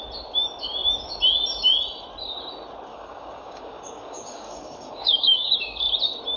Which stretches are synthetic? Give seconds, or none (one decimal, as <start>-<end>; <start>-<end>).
2.9-5.8